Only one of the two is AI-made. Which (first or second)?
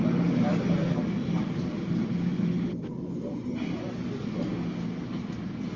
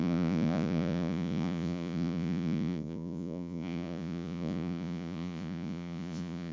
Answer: second